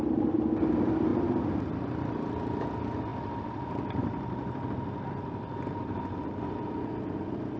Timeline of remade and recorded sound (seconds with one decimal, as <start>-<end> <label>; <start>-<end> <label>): 0.0-7.6 recorded